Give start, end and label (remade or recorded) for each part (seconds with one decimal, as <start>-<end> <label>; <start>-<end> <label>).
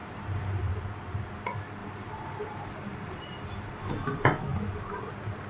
0.0-0.6 remade; 0.6-1.8 recorded; 1.8-3.9 remade; 3.9-4.5 recorded; 4.5-5.1 remade; 5.1-5.5 recorded